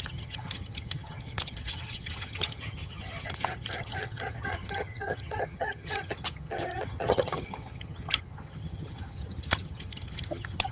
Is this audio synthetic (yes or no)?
yes